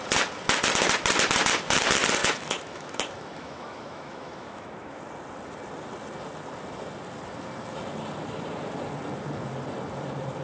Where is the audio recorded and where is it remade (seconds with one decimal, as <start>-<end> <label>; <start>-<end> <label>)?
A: 0.0-2.2 recorded; 2.2-5.0 remade; 5.0-10.4 recorded